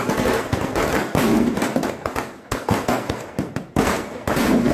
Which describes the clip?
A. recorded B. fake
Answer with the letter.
B